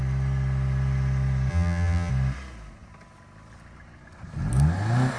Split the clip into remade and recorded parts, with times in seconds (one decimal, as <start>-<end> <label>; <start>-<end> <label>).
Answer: 0.0-1.5 recorded; 1.5-2.1 remade; 2.1-5.2 recorded